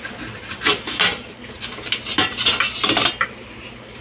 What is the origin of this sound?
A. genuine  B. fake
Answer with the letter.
A